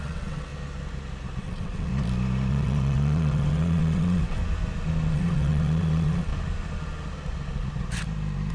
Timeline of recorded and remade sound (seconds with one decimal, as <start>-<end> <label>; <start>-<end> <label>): 0.0-0.5 remade; 0.5-1.4 recorded; 1.4-1.9 remade; 1.9-2.5 recorded; 2.5-4.4 remade; 4.4-5.1 recorded; 5.1-6.3 remade; 6.3-8.5 recorded